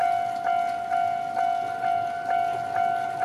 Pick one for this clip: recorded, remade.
recorded